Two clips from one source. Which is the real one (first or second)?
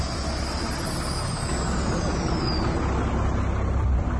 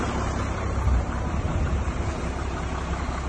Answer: first